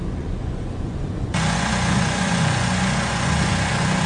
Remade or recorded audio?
remade